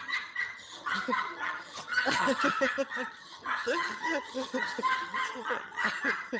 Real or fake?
fake